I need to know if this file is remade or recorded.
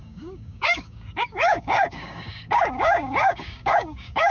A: remade